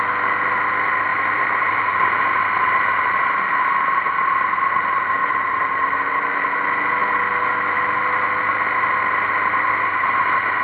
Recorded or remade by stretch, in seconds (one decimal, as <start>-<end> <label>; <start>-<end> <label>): 0.0-1.1 recorded; 1.1-2.2 remade; 2.2-5.2 recorded; 5.2-6.6 remade; 6.6-10.6 recorded